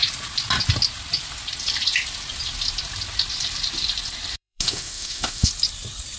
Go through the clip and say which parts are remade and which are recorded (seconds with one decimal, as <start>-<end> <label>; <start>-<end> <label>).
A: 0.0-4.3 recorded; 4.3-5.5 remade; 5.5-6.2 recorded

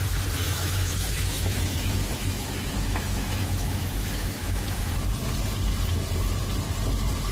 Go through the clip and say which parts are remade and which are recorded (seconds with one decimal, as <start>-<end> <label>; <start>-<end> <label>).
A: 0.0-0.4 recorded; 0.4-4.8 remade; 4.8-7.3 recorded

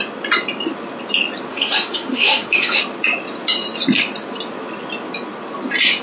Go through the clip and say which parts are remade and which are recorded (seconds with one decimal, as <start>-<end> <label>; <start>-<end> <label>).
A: 0.0-1.5 recorded; 1.5-2.8 remade; 2.8-6.0 recorded

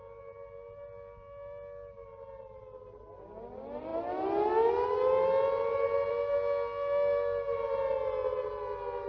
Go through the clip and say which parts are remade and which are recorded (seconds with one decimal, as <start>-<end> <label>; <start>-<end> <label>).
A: 0.0-9.1 recorded

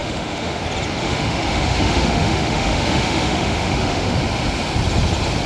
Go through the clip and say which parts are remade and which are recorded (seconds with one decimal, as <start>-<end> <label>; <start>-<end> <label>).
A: 0.0-0.6 remade; 0.6-1.0 recorded; 1.0-4.2 remade; 4.2-5.5 recorded

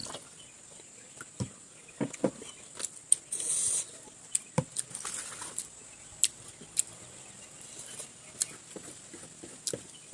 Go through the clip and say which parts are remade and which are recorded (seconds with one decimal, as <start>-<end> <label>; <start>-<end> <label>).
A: 0.0-10.1 recorded

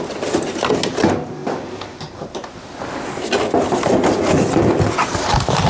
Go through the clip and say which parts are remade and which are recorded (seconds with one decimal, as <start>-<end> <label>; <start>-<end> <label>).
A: 0.0-5.7 recorded

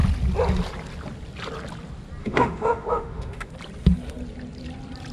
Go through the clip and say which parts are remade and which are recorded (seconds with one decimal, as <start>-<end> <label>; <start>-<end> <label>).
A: 0.0-2.2 recorded; 2.2-3.5 remade; 3.5-5.1 recorded